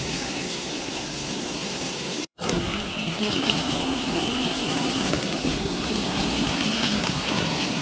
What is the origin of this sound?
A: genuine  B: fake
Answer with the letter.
B